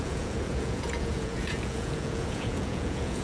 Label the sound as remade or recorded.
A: remade